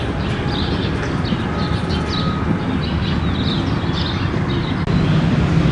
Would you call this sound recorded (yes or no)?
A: yes